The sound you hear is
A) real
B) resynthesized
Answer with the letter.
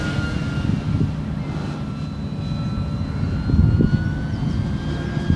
A